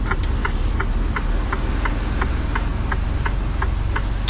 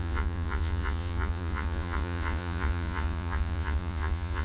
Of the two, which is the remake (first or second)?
second